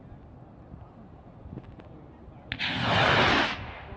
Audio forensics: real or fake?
real